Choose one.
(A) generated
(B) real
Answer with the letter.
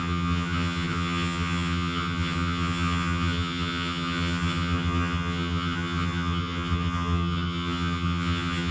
A